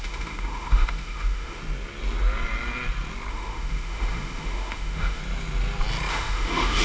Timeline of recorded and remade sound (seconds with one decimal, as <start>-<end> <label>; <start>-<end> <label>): 0.0-1.6 remade; 1.6-3.3 recorded; 3.3-5.2 remade; 5.2-6.1 recorded; 6.1-6.8 remade

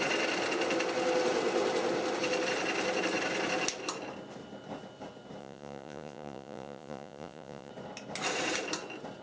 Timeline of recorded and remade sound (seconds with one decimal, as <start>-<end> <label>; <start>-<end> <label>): 0.0-5.4 recorded; 5.4-7.7 remade; 7.7-9.2 recorded

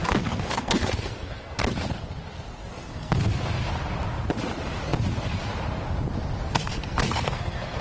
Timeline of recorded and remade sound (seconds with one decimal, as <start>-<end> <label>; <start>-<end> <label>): 0.0-1.6 remade; 1.6-2.7 recorded; 2.7-3.4 remade; 3.4-6.4 recorded; 6.4-7.8 remade

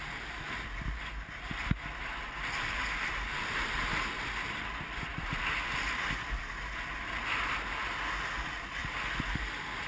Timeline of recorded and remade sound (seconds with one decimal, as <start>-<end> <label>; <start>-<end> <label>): 0.0-9.9 recorded

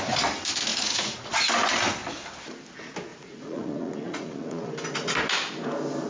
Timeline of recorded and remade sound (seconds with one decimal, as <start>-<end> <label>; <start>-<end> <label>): 0.0-0.7 recorded; 0.7-1.3 remade; 1.3-3.1 recorded; 3.1-4.7 remade; 4.7-6.1 recorded

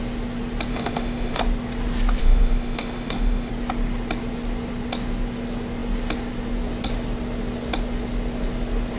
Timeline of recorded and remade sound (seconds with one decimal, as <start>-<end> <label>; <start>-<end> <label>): 0.0-0.7 recorded; 0.7-1.4 remade; 1.4-2.2 recorded; 2.2-3.5 remade; 3.5-9.0 recorded

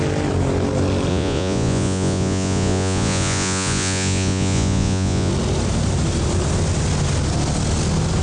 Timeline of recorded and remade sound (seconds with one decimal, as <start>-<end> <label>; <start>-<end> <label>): 0.0-1.1 recorded; 1.1-5.3 remade; 5.3-8.2 recorded